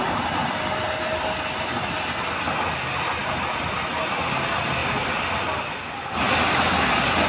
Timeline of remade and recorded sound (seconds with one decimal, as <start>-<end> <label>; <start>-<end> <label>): 0.0-7.3 recorded

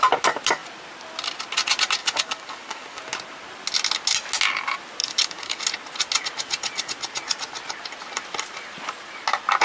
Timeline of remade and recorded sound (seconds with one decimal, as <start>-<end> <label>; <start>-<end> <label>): 0.0-2.0 recorded; 2.0-3.0 remade; 3.0-5.0 recorded; 5.0-5.6 remade; 5.6-9.6 recorded

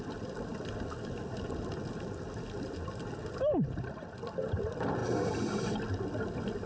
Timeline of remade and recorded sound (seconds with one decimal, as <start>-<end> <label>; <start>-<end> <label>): 0.0-6.7 recorded

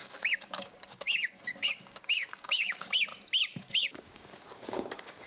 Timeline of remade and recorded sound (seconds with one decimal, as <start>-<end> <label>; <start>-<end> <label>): 0.0-3.1 remade; 3.1-3.6 recorded; 3.6-5.3 remade